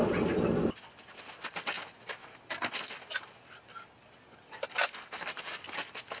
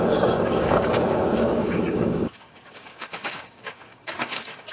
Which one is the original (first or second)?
first